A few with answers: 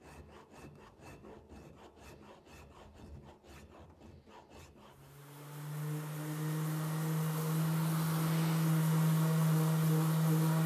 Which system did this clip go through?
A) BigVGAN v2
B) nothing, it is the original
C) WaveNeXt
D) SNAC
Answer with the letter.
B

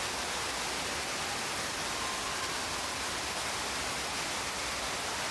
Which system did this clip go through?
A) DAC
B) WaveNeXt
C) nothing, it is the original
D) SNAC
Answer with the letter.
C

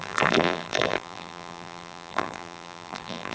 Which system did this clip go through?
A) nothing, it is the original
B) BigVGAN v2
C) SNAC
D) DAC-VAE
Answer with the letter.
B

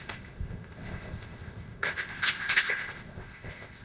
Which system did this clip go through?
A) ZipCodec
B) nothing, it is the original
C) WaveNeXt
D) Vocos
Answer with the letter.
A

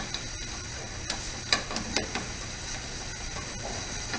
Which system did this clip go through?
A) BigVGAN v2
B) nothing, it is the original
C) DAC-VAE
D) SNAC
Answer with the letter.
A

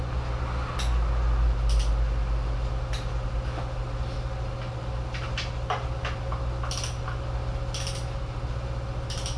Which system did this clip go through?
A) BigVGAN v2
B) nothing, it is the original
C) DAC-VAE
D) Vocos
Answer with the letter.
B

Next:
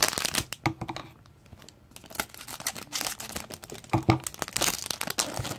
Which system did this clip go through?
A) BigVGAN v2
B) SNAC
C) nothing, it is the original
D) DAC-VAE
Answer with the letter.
C